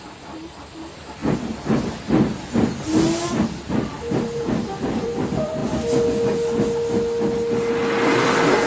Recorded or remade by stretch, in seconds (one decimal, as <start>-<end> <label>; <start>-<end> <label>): 0.0-1.2 remade; 1.2-3.7 recorded; 3.7-5.6 remade; 5.6-7.7 recorded; 7.7-8.7 remade

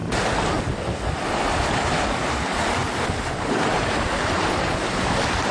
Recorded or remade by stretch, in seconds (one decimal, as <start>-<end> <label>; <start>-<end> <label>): 0.0-2.8 recorded; 2.8-4.9 remade; 4.9-5.5 recorded

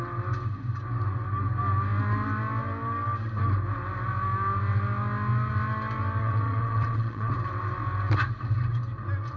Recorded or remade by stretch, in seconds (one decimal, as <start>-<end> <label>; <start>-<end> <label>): 0.0-6.2 recorded; 6.2-7.3 remade; 7.3-9.4 recorded